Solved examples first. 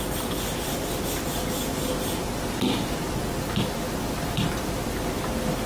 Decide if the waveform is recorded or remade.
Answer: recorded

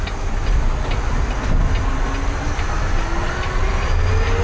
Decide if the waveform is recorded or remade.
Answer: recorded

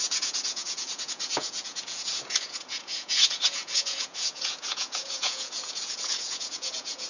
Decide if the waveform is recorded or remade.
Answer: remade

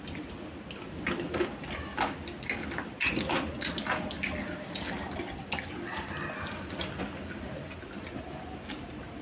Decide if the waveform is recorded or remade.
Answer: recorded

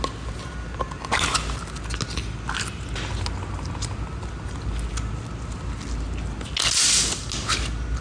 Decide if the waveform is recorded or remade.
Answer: recorded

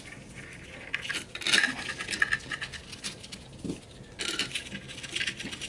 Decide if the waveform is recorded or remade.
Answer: recorded